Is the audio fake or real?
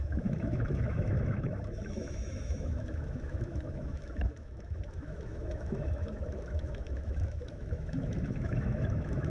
fake